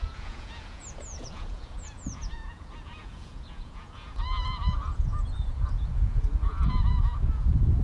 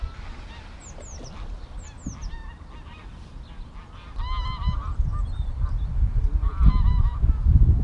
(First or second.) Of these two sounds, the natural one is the second